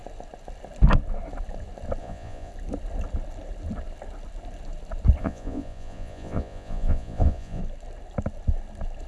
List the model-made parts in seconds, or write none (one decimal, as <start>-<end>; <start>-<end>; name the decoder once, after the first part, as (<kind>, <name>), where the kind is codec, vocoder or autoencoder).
2.0-2.5 (vocoder, Vocos); 5.2-7.6